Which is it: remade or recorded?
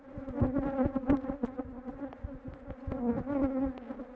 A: recorded